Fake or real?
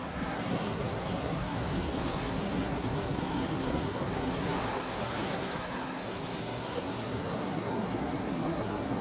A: fake